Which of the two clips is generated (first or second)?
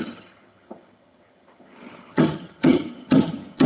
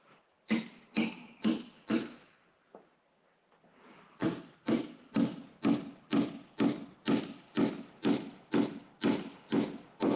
first